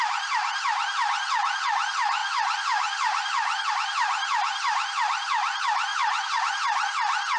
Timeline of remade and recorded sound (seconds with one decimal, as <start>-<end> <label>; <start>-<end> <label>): 0.0-2.2 recorded; 2.2-3.7 remade; 3.7-5.9 recorded; 5.9-6.4 remade; 6.4-7.4 recorded